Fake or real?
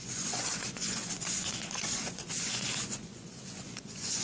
fake